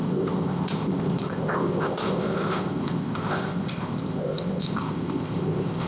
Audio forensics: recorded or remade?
remade